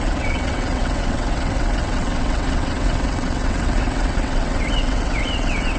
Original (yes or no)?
no